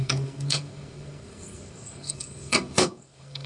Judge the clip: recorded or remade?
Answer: remade